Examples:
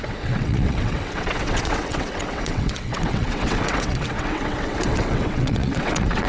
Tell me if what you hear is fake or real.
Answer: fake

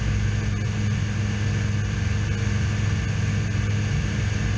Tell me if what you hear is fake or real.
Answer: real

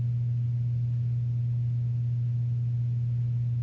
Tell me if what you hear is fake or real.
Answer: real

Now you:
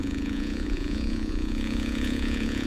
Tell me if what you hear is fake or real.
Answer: fake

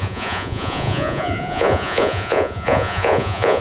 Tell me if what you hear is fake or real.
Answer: fake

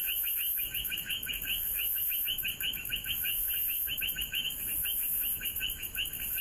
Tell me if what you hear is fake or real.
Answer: fake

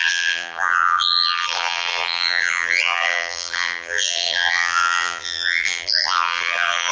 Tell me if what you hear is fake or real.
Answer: fake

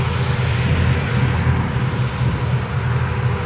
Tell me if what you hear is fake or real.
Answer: real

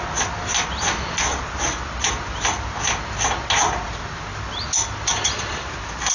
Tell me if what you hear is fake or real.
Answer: real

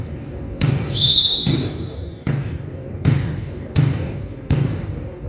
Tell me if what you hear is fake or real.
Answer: fake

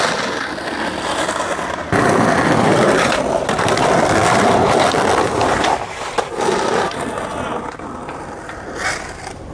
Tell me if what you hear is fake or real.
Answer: fake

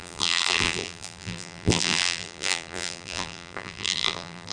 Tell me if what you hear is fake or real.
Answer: fake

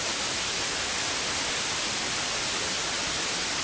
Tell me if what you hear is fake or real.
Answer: real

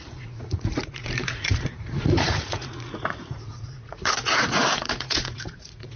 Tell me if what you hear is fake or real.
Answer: fake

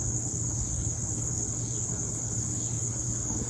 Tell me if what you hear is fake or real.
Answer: fake